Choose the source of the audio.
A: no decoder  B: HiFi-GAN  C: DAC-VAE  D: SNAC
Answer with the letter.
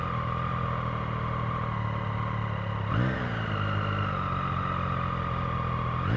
A